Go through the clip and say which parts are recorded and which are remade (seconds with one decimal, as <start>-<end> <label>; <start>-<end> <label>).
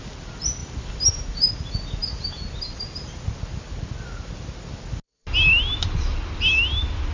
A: 0.0-0.6 recorded; 0.6-1.2 remade; 1.2-7.1 recorded